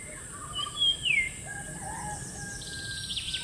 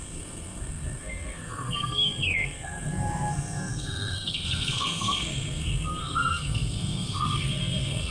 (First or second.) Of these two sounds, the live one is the first